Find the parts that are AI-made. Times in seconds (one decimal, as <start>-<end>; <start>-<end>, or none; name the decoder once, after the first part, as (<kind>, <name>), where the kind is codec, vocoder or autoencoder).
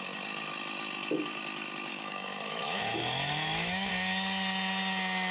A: 1.9-3.9 (autoencoder, DAC-VAE)